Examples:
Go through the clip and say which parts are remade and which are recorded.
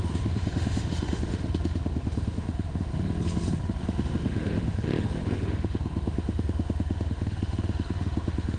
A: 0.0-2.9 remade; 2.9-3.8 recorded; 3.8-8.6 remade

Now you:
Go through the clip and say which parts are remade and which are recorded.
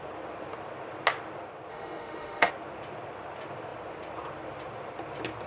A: 0.0-1.7 recorded; 1.7-2.5 remade; 2.5-5.5 recorded